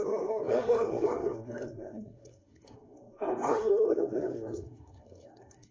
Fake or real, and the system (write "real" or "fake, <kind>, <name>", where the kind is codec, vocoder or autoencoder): fake, codec, SNAC